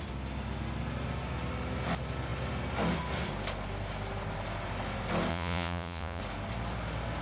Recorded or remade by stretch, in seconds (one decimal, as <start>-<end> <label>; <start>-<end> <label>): 0.0-5.3 recorded; 5.3-6.2 remade; 6.2-7.2 recorded